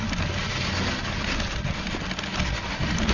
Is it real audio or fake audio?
real